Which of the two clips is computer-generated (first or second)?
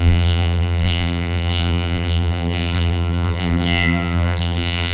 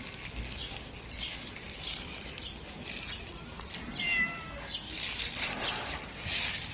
first